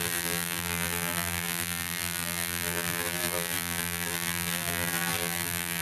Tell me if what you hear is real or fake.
fake